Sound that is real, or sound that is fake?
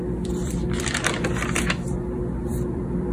fake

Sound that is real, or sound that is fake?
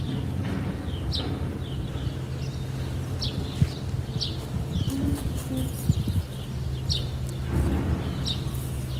real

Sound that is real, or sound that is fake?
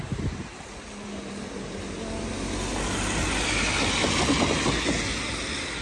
real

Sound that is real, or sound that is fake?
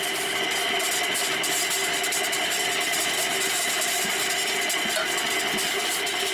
real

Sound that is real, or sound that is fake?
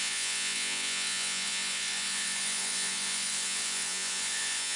fake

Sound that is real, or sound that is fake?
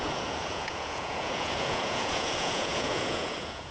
fake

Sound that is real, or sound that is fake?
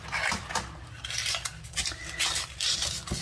real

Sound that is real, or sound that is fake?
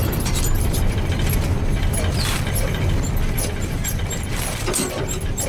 fake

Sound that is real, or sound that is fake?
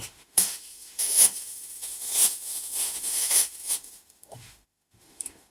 fake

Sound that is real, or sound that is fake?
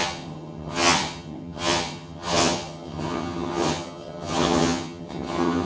fake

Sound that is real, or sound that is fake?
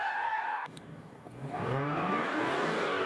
fake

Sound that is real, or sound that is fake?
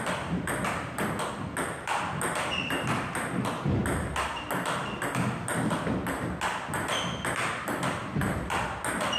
real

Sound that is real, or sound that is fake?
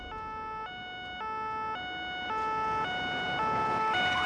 real